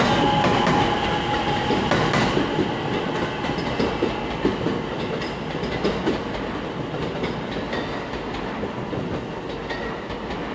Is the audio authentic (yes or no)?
yes